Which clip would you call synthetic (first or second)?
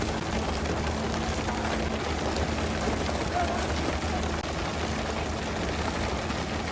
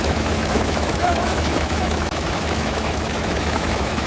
second